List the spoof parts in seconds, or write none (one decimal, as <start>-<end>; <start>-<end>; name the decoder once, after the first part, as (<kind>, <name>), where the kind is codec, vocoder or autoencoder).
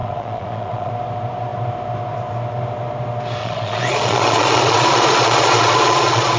0.0-0.9 (vocoder, Vocos); 3.4-6.4